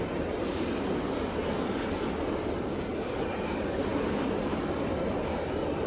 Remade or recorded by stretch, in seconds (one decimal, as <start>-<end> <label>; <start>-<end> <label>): 0.0-5.9 recorded